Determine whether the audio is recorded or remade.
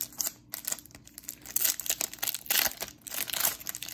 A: recorded